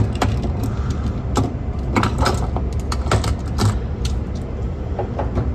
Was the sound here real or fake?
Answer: real